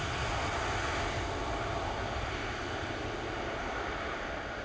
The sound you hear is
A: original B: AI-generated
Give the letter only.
A